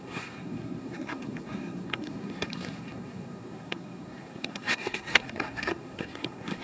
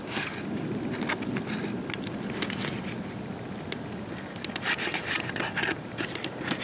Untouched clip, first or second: second